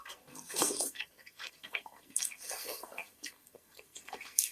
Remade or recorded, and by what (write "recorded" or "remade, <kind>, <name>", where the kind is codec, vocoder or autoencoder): remade, codec, SNAC